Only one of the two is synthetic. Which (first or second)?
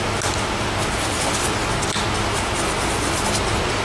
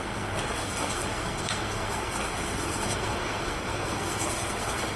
second